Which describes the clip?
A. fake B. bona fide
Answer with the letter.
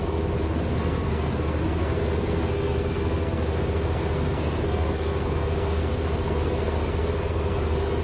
A